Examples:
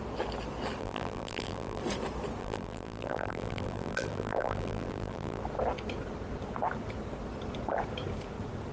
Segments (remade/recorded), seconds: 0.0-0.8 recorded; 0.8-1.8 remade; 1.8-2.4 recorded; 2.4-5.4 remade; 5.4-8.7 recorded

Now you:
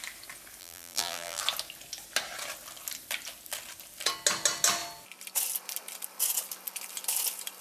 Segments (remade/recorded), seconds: 0.0-0.6 recorded; 0.6-1.4 remade; 1.4-7.6 recorded